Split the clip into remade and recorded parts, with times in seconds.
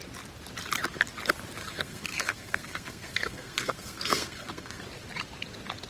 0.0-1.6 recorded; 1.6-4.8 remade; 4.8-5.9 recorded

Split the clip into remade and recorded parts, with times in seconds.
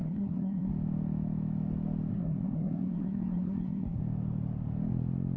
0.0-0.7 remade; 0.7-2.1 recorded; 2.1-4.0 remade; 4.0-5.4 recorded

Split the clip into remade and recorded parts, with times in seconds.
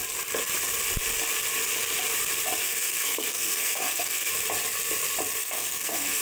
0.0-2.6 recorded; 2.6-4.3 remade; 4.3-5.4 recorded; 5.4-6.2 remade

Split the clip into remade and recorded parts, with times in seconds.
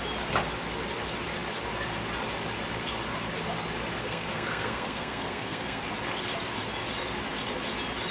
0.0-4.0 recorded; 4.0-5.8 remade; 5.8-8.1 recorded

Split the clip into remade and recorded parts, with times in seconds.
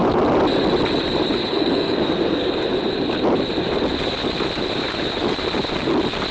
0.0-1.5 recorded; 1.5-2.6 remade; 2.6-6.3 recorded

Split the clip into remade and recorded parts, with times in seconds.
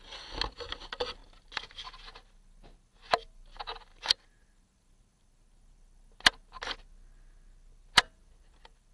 0.0-8.9 recorded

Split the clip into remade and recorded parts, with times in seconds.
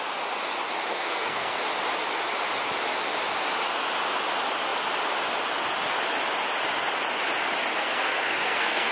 0.0-0.9 recorded; 0.9-1.6 remade; 1.6-7.7 recorded; 7.7-8.9 remade